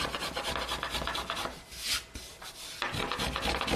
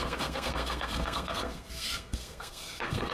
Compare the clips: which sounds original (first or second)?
first